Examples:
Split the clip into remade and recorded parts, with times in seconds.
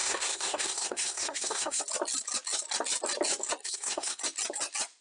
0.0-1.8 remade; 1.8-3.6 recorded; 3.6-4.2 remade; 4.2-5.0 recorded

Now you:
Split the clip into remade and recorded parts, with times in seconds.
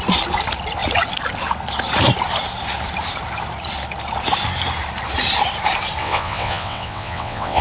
0.0-6.0 recorded; 6.0-7.6 remade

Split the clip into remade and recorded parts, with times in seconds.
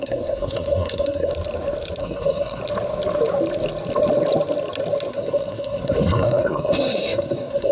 0.0-1.3 remade; 1.3-2.0 recorded; 2.0-2.6 remade; 2.6-5.1 recorded; 5.1-7.7 remade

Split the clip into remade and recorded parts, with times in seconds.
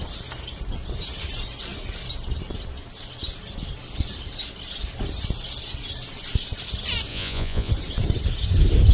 0.0-7.1 recorded; 7.1-7.7 remade; 7.7-8.9 recorded